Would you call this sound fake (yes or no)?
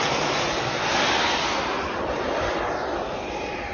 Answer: no